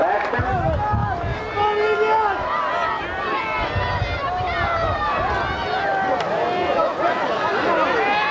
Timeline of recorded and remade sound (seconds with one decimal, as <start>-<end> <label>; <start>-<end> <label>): 0.0-8.3 recorded